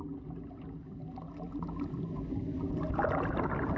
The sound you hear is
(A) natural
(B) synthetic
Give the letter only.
A